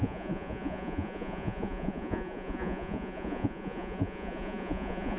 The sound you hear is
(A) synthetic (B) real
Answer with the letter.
A